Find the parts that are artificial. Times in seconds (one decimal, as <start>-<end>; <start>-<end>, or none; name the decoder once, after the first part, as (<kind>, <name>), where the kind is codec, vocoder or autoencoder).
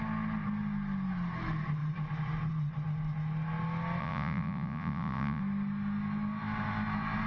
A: 4.0-5.4 (vocoder, Vocos)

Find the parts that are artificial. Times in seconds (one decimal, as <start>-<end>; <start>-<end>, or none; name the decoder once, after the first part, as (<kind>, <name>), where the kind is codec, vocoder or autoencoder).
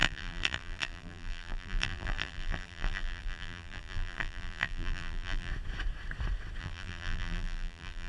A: 0.0-5.5 (vocoder, BigVGAN v2); 6.6-8.1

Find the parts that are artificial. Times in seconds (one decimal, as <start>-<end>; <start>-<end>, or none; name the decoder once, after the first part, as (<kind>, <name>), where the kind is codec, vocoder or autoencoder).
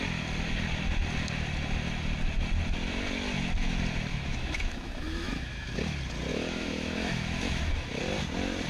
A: 4.1-5.7 (autoencoder, DAC-VAE); 6.3-8.0